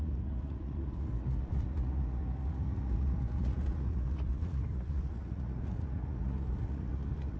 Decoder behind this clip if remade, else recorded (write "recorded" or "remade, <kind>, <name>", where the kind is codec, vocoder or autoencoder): remade, vocoder, Vocos